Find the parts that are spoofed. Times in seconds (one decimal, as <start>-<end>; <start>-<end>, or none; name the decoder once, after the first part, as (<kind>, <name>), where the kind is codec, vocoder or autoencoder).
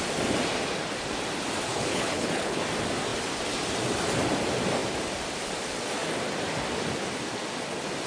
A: 1.7-2.6 (codec, HILCodec)